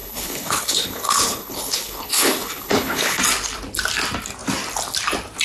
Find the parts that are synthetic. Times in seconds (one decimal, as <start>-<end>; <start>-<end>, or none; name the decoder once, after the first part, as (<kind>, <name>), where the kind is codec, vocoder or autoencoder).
0.0-3.2 (codec, HILCodec)